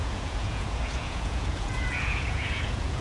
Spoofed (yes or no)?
yes